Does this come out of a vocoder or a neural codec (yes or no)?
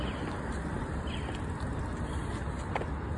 no